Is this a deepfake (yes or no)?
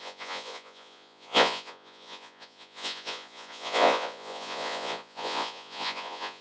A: yes